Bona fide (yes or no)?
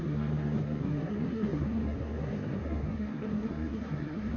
no